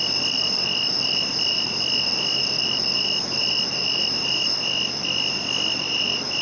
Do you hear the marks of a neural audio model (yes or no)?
no